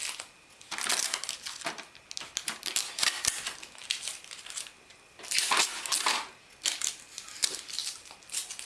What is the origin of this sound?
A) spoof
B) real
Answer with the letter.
B